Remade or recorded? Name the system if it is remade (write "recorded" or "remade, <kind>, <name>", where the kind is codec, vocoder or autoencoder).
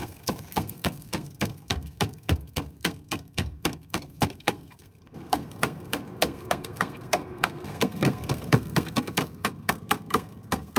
remade, codec, SNAC